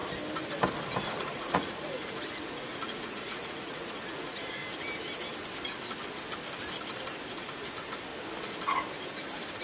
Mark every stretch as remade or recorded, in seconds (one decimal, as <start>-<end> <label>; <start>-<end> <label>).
0.0-1.1 recorded; 1.1-4.6 remade; 4.6-7.3 recorded; 7.3-8.1 remade; 8.1-9.6 recorded

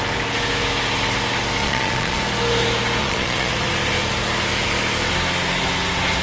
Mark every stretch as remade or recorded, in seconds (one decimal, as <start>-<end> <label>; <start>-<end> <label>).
0.0-1.6 recorded; 1.6-2.2 remade; 2.2-3.0 recorded; 3.0-3.5 remade; 3.5-6.2 recorded

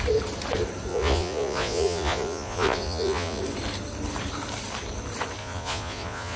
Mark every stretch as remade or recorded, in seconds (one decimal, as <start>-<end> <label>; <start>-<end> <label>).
0.0-0.9 recorded; 0.9-3.4 remade; 3.4-5.4 recorded; 5.4-6.4 remade

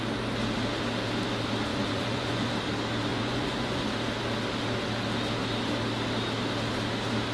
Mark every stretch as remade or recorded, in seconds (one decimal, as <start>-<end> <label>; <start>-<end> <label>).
0.0-1.7 recorded; 1.7-2.5 remade; 2.5-3.1 recorded; 3.1-3.8 remade; 3.8-7.3 recorded

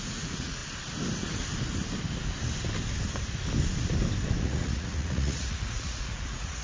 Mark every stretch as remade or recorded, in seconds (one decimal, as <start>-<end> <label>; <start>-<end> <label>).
0.0-0.6 remade; 0.6-4.4 recorded; 4.4-6.6 remade

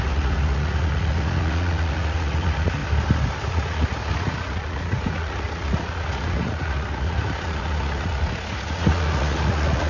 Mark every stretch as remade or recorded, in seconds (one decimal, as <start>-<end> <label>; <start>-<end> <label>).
0.0-2.8 remade; 2.8-3.5 recorded; 3.5-9.9 remade

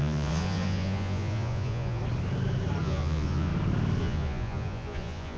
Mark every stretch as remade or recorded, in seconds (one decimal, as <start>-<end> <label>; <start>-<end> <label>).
0.0-2.0 remade; 2.0-2.8 recorded; 2.8-3.5 remade; 3.5-4.0 recorded; 4.0-5.4 remade